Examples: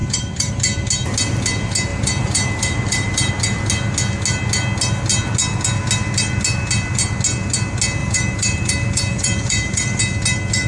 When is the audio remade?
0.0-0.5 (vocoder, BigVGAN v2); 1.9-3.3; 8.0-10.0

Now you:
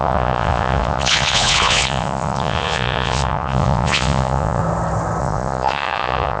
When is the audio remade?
0.0-4.6 (vocoder, Vocos); 5.2-6.4

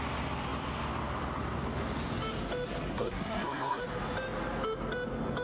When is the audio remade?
2.9-3.8 (codec, SNAC)

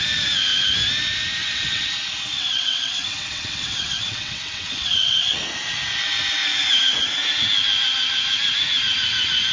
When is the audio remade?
1.4-1.9 (vocoder, WaveNeXt); 2.3-5.4

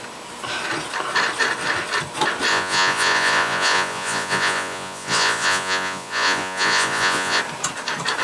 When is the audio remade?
2.5-7.4 (vocoder, Vocos)

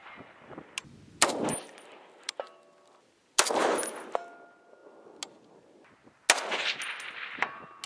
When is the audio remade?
none

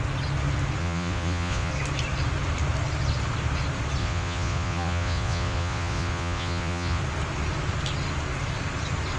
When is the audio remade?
0.8-1.7 (vocoder, Vocos); 4.0-7.0

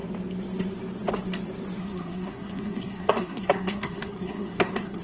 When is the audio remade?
1.8-5.0 (codec, SNAC)